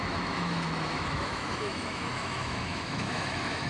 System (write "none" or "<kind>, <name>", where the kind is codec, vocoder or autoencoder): autoencoder, DAC-VAE